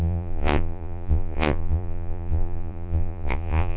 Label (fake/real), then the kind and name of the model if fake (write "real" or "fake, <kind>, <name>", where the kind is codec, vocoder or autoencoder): fake, vocoder, Vocos